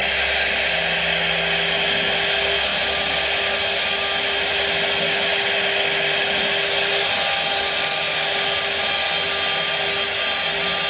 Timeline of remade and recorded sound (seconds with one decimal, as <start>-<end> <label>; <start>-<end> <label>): 0.0-10.9 recorded